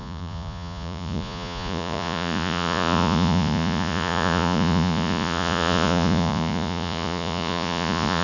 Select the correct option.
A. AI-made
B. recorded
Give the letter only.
A